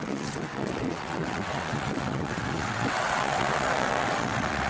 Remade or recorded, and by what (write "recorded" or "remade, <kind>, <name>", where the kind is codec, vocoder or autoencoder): remade, vocoder, WaveNeXt